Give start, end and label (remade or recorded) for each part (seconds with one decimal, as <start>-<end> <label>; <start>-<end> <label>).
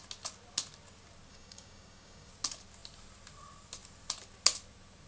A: 0.0-1.3 recorded; 1.3-2.3 remade; 2.3-5.1 recorded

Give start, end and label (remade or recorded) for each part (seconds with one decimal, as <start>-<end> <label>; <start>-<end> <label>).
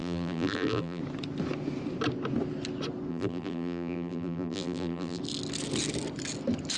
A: 0.0-1.0 remade; 1.0-3.1 recorded; 3.1-5.2 remade; 5.2-6.8 recorded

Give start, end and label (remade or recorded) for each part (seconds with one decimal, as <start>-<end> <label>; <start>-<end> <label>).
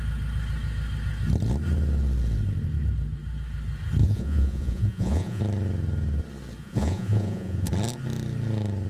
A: 0.0-4.0 recorded; 4.0-5.4 remade; 5.4-6.6 recorded; 6.6-7.7 remade; 7.7-8.9 recorded